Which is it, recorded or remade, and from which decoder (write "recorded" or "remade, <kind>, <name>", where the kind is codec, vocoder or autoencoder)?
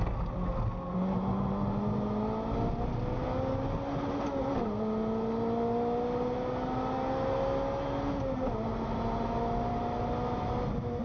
recorded